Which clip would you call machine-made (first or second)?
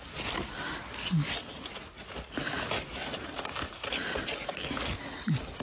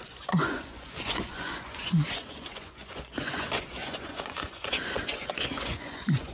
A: second